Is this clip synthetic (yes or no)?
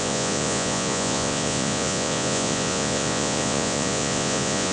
yes